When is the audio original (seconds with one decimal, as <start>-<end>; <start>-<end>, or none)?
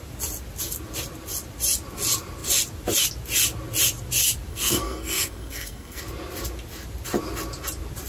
0.0-4.5; 6.0-8.1